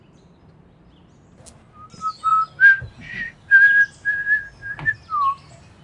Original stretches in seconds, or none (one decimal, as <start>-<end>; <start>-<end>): 0.0-5.8